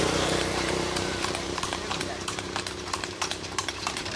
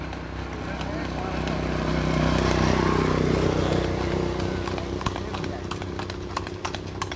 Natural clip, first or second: second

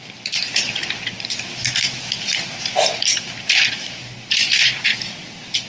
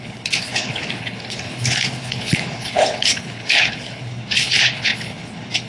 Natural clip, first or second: first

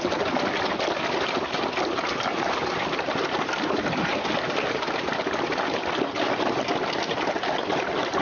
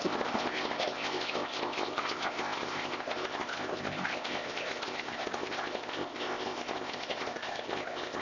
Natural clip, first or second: first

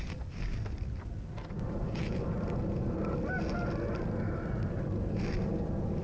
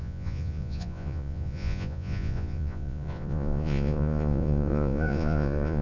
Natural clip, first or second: first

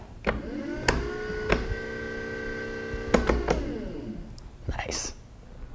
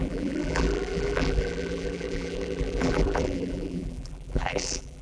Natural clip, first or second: first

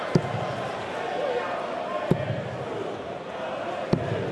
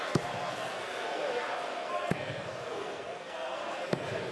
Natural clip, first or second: first